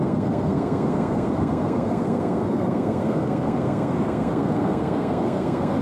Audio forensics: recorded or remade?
remade